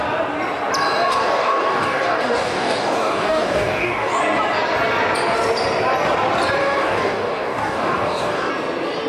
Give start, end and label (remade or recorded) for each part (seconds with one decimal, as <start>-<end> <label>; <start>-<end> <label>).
0.0-1.1 recorded; 1.1-4.2 remade; 4.2-6.6 recorded; 6.6-8.5 remade; 8.5-9.1 recorded